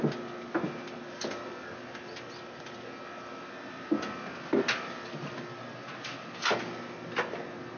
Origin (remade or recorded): recorded